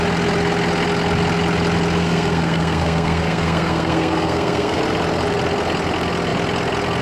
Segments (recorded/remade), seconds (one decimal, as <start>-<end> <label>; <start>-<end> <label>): 0.0-2.0 recorded; 2.0-4.8 remade; 4.8-7.0 recorded